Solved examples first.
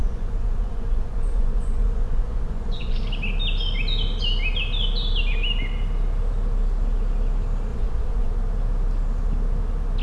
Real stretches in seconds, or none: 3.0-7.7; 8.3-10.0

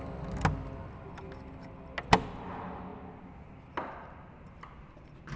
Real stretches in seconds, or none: 0.0-5.4

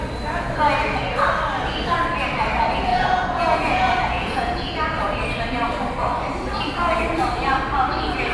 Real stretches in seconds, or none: 0.0-2.9; 4.7-8.3

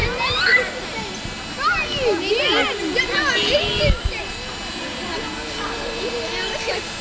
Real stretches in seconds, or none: 0.0-7.0

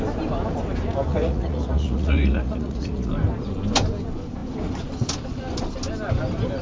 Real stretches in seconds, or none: 0.0-1.1; 3.1-6.6

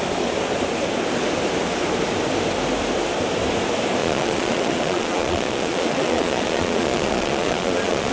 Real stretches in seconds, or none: 0.0-4.0